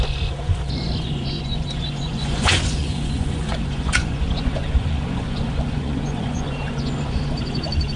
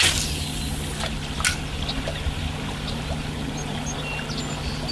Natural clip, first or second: second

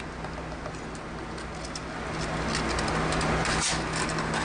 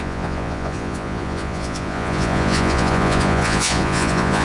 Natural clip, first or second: first